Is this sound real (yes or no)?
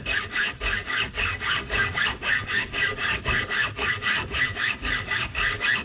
no